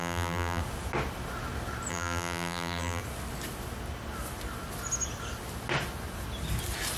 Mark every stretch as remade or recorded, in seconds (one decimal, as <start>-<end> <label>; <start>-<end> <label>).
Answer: 0.0-0.6 remade; 0.6-1.9 recorded; 1.9-3.0 remade; 3.0-7.0 recorded